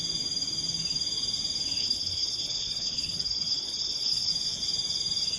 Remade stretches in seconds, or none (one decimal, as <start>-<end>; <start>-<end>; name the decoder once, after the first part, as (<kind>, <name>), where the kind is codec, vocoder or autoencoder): 1.8-4.3 (codec, HILCodec)

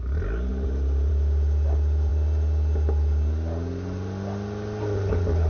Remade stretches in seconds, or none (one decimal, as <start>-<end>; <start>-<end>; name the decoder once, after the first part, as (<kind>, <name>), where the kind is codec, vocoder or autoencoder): none

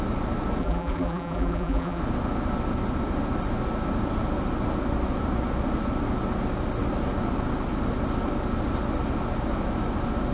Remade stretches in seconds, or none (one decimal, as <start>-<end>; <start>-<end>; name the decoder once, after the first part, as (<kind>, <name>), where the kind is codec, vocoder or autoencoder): 0.6-2.0 (vocoder, BigVGAN v2)

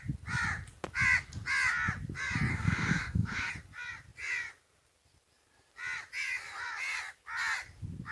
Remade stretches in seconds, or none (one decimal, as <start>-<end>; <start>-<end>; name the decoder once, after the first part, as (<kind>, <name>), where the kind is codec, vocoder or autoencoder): 2.5-3.5 (codec, DAC)

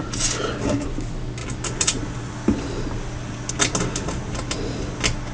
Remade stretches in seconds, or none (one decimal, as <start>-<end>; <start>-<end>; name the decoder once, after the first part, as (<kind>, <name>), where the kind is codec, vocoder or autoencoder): none